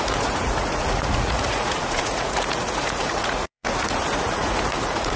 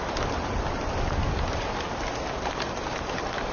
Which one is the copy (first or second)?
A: first